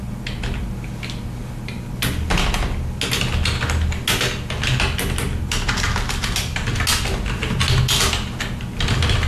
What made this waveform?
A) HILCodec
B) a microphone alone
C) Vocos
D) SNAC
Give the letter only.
B